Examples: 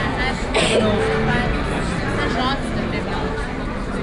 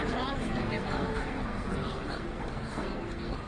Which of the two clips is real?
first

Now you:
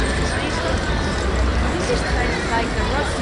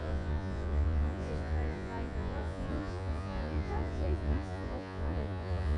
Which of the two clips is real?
first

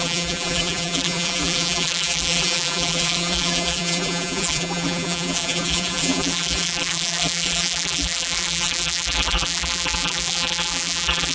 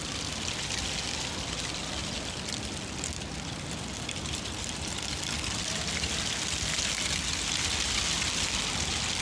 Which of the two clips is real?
second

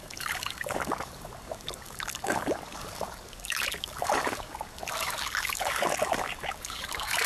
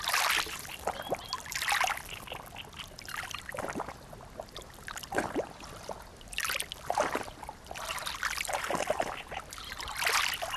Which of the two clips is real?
second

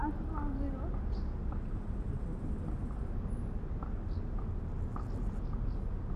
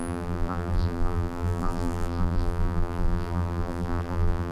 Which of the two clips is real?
first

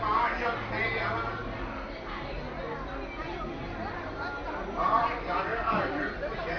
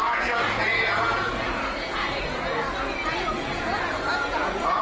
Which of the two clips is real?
first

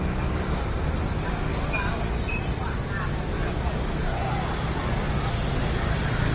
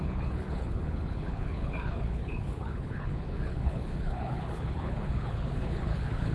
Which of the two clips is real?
first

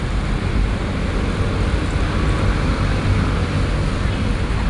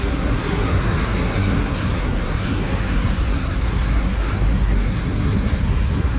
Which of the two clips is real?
first